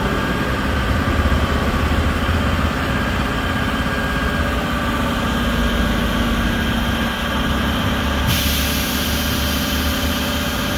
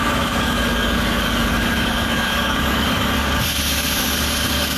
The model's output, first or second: second